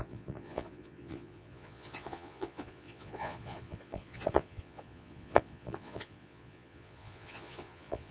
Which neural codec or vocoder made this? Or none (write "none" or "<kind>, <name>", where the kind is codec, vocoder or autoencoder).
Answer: vocoder, Vocos